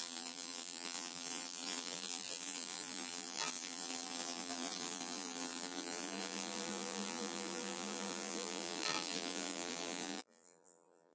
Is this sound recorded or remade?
remade